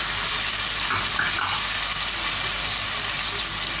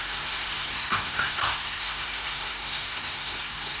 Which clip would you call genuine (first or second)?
first